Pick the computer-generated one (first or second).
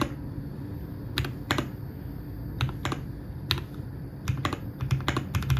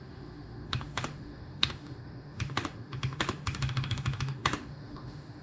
second